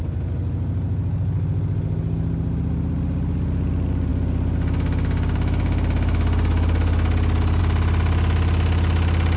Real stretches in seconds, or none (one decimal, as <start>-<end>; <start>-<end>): 0.0-9.4